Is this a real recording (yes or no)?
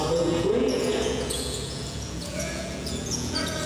no